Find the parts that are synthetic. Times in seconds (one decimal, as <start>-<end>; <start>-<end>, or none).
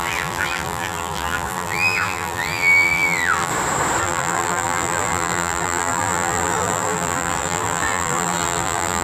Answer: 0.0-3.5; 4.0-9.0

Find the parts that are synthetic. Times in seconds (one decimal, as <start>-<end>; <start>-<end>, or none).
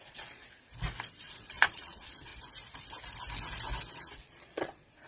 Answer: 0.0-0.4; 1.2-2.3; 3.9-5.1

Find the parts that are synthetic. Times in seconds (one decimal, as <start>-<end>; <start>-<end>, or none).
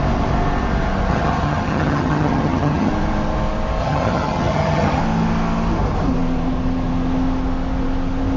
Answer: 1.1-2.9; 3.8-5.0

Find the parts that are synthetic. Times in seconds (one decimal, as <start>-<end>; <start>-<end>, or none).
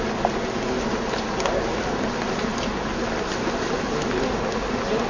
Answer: none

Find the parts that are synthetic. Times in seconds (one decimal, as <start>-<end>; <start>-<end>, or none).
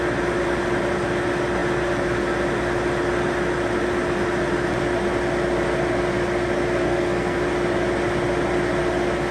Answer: 6.8-7.4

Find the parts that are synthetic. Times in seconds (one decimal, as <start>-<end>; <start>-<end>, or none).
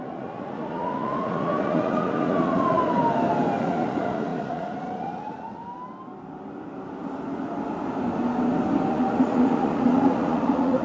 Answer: 0.0-2.8; 3.6-5.6; 8.9-10.8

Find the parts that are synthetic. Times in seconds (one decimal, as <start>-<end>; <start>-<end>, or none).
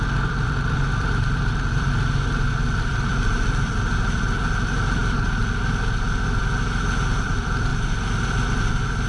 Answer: 0.0-5.0; 7.2-7.7; 8.7-9.1